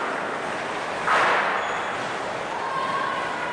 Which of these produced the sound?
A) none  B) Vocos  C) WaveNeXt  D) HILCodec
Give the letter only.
A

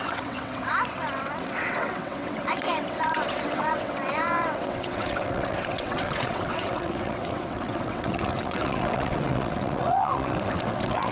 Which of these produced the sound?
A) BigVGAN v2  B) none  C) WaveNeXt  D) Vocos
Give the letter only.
C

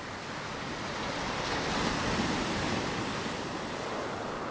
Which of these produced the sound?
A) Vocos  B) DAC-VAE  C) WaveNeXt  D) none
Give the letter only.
D